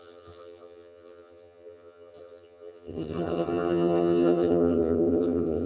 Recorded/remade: remade